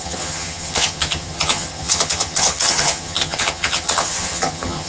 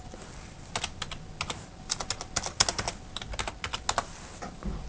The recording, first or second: second